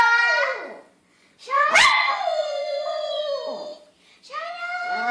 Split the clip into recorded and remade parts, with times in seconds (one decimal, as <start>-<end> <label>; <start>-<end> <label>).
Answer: 0.0-0.5 recorded; 0.5-3.2 remade; 3.2-5.1 recorded